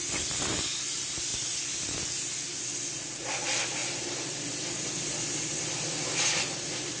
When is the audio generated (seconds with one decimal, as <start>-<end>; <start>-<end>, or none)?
none